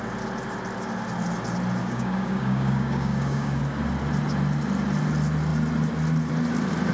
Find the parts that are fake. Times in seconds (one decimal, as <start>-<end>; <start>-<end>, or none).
1.8-3.6